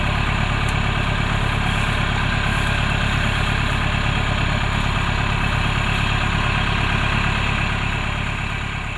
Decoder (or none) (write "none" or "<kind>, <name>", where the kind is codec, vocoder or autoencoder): none